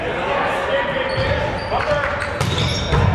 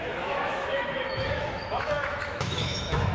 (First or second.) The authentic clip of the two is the first